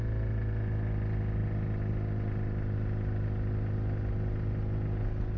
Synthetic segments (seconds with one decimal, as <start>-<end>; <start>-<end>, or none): none